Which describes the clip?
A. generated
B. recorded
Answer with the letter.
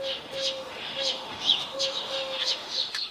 A